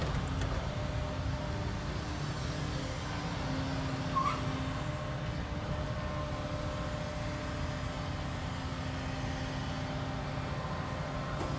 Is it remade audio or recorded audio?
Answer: recorded